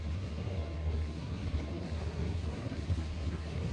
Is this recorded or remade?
remade